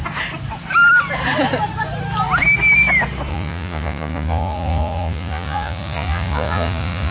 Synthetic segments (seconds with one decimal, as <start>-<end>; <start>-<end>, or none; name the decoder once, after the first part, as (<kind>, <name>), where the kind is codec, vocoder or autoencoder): 3.3-7.1 (vocoder, Vocos)